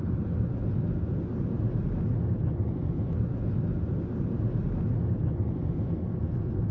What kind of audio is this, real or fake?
real